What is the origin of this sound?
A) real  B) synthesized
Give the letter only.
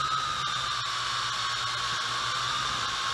A